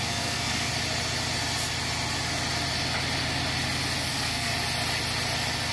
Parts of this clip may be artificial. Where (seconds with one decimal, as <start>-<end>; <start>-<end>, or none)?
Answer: 0.0-0.7; 4.1-4.5